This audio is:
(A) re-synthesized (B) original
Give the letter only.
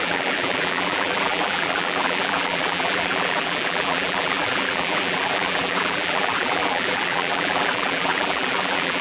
A